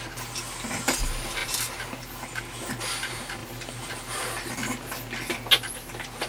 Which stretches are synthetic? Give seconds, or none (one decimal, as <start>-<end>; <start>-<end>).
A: none